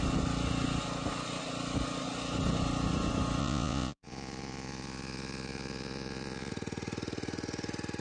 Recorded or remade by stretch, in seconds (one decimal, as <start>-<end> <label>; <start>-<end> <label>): 0.0-3.4 recorded; 3.4-6.5 remade; 6.5-8.0 recorded